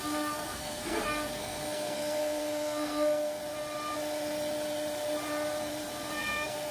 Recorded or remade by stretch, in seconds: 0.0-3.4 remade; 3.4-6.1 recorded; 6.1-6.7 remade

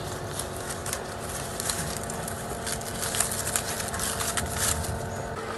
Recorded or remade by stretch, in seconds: 0.0-5.6 recorded

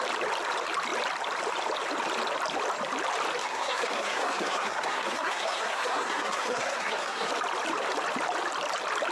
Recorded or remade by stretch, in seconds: 0.0-3.4 recorded; 3.4-7.3 remade; 7.3-9.1 recorded

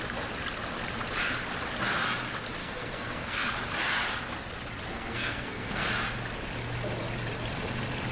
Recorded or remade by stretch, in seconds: 0.0-2.6 recorded; 2.6-3.5 remade; 3.5-4.9 recorded; 4.9-5.9 remade; 5.9-8.1 recorded

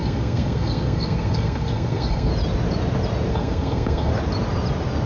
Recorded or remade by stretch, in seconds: 0.0-2.3 remade; 2.3-3.3 recorded; 3.3-4.1 remade; 4.1-5.1 recorded

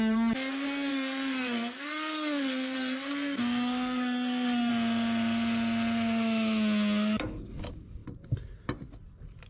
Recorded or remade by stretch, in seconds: 0.0-0.9 recorded; 0.9-4.7 remade; 4.7-9.5 recorded

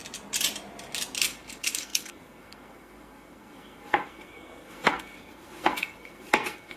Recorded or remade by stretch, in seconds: 0.0-1.2 recorded; 1.2-6.8 remade

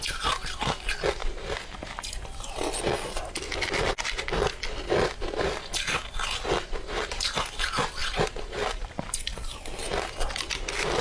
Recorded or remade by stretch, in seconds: 0.0-11.0 recorded